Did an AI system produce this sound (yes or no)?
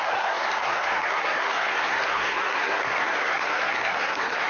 yes